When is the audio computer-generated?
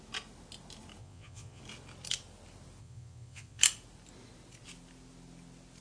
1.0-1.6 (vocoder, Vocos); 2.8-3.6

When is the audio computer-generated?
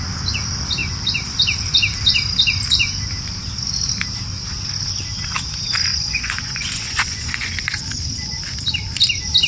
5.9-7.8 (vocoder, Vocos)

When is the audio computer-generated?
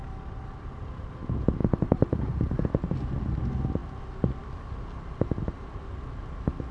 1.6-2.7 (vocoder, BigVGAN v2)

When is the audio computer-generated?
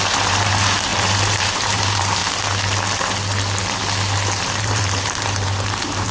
0.0-2.2 (vocoder, BigVGAN v2); 4.5-6.1